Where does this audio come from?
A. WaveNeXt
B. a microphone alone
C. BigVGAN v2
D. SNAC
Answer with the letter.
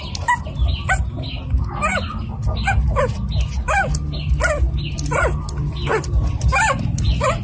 B